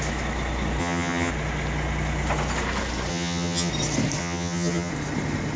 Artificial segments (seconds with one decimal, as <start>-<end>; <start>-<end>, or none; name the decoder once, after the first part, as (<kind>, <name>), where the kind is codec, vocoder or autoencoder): 0.8-1.3 (vocoder, HiFi-GAN); 3.1-3.7; 4.2-4.9